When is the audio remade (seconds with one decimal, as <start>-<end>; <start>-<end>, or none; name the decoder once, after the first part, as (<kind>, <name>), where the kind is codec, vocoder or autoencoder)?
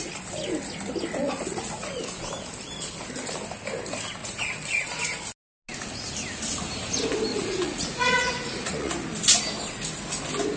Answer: 1.2-2.0 (vocoder, Vocos); 4.2-5.0; 7.3-8.9